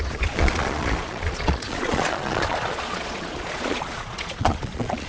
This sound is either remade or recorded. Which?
remade